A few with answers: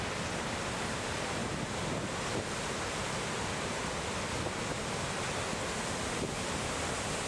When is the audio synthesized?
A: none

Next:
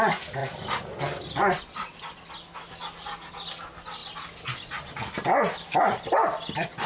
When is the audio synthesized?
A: none

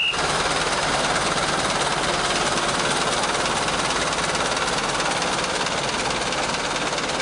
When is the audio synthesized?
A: none

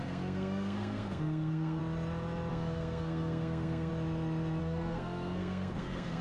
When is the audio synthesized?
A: 0.0-1.8 (codec, SNAC); 2.5-3.9; 4.6-6.2

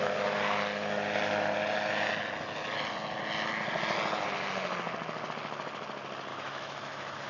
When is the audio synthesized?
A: 6.3-7.3 (autoencoder, DAC-VAE)